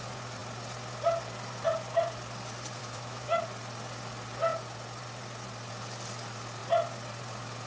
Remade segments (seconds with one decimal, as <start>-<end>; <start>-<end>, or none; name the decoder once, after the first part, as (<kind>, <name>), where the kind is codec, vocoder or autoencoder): 2.8-3.4 (autoencoder, DAC-VAE)